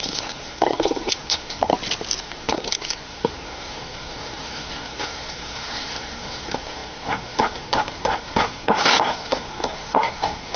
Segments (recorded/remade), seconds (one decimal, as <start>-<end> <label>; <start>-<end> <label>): 0.0-1.7 remade; 1.7-2.2 recorded; 2.2-10.6 remade